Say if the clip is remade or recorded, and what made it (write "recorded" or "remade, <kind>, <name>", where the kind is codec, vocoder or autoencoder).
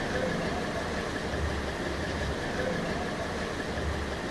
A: recorded